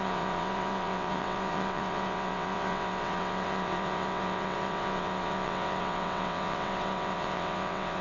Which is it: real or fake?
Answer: fake